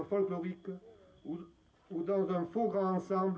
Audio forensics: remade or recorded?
recorded